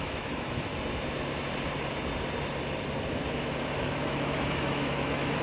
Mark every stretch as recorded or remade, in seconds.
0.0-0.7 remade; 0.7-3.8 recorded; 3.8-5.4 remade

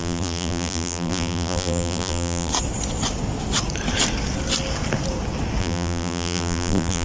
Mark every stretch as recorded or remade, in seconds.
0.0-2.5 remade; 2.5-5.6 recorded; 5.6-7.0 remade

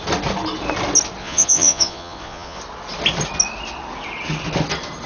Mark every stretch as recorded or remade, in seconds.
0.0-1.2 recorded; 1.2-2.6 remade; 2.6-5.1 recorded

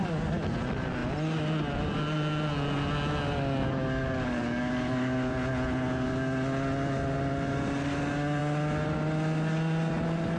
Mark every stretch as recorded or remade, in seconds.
0.0-3.8 recorded; 3.8-5.3 remade; 5.3-10.4 recorded